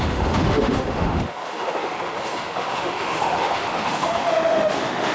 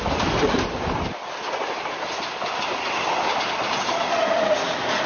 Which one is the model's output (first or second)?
first